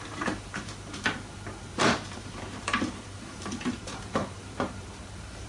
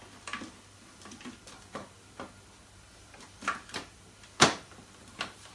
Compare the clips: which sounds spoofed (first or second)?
first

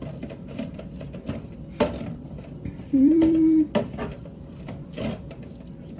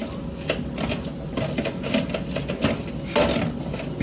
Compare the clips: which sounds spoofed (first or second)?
first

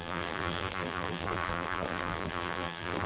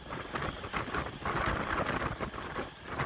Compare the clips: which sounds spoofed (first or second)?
first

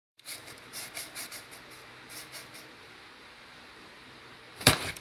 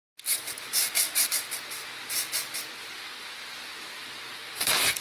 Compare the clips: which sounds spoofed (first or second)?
first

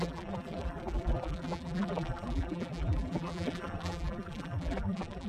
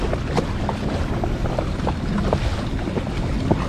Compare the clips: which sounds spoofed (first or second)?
first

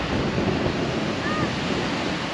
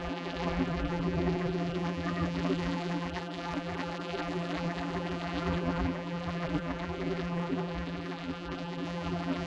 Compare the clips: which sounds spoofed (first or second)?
second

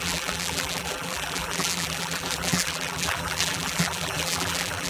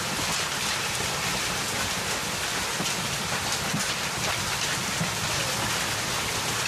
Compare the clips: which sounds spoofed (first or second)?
first